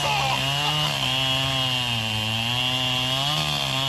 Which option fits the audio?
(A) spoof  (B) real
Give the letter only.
B